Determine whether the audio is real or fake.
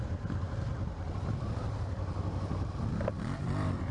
real